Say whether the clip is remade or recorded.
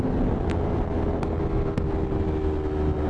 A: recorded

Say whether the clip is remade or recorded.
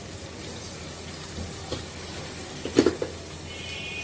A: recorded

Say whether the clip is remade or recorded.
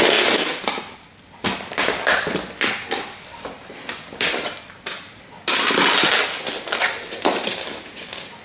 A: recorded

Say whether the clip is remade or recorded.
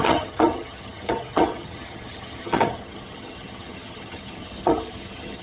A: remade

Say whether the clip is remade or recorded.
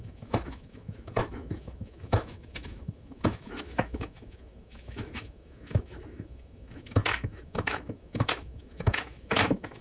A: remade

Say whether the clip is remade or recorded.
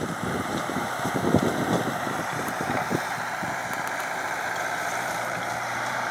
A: remade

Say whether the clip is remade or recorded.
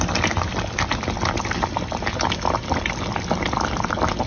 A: recorded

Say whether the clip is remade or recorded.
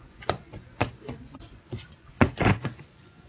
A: remade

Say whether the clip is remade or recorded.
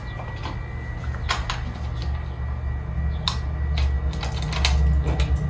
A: recorded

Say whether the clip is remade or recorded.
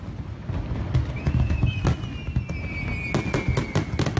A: recorded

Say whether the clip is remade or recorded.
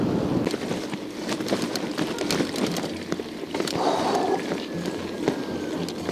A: recorded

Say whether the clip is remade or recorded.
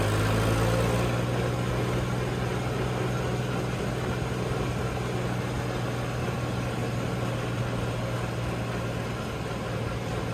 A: recorded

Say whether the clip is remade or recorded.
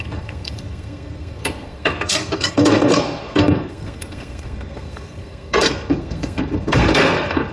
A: remade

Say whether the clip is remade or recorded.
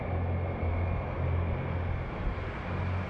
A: recorded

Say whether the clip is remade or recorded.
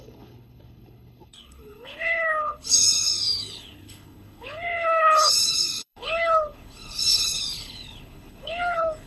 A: remade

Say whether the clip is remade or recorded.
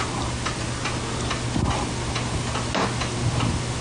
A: recorded